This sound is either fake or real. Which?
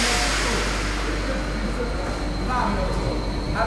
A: real